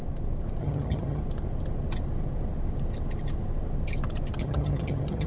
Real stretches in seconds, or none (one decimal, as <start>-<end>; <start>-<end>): 0.0-0.6; 1.2-4.4